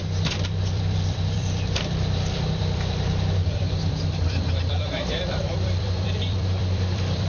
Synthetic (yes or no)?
yes